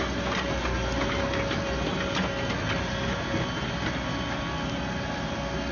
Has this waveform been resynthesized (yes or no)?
no